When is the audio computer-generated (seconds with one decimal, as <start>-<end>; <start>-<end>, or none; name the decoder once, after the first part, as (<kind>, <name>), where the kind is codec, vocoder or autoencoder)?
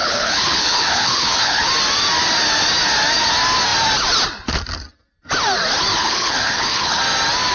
0.0-1.7 (codec, HILCodec); 6.0-7.0